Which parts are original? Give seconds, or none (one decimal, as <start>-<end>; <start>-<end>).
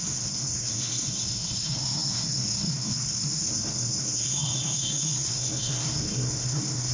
none